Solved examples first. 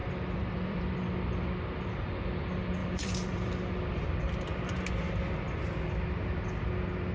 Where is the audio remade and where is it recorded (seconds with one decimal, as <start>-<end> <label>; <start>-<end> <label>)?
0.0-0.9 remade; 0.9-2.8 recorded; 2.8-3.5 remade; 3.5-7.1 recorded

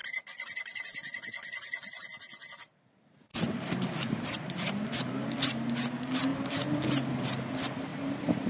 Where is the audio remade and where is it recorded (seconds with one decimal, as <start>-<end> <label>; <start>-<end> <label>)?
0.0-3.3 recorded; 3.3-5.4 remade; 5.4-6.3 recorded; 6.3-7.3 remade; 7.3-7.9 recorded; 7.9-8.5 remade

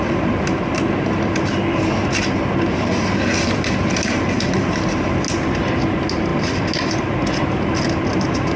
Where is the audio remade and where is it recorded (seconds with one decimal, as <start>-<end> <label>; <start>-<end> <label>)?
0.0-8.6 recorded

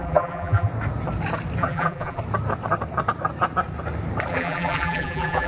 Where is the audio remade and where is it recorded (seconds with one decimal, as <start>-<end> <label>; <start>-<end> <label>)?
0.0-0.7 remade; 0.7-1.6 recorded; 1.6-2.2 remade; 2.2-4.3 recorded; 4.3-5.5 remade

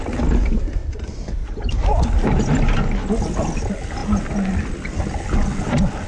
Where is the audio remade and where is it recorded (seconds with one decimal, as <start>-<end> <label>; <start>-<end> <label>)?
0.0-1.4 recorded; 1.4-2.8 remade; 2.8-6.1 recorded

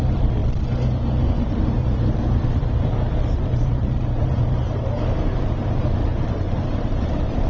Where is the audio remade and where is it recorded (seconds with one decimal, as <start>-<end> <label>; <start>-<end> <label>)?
0.0-0.4 remade; 0.4-1.3 recorded; 1.3-7.5 remade

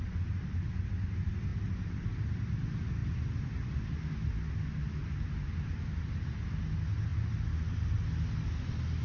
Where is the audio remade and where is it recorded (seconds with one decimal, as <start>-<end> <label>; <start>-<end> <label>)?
0.0-1.5 recorded; 1.5-2.1 remade; 2.1-3.0 recorded; 3.0-3.8 remade; 3.8-5.0 recorded; 5.0-6.5 remade; 6.5-9.0 recorded

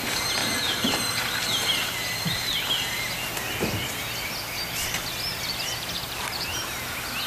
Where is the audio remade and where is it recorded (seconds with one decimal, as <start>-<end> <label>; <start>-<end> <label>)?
0.0-0.4 recorded; 0.4-0.9 remade; 0.9-5.3 recorded; 5.3-6.7 remade; 6.7-7.3 recorded